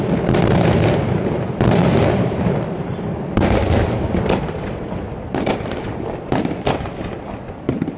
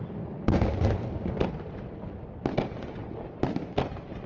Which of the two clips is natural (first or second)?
second